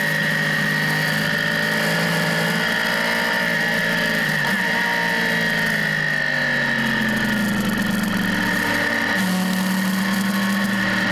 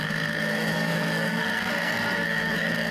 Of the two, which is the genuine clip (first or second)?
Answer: first